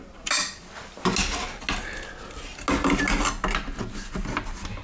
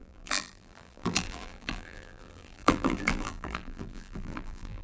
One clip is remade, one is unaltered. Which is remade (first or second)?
second